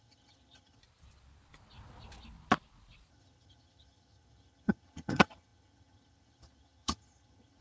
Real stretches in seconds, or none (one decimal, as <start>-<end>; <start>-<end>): 0.8-3.1